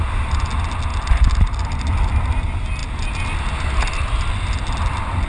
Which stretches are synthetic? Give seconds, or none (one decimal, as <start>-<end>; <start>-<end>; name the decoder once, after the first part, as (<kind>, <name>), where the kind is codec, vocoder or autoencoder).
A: none